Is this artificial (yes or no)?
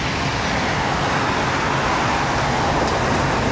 no